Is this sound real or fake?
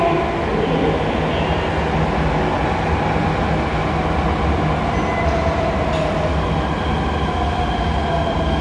real